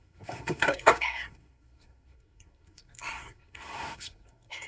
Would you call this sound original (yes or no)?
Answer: no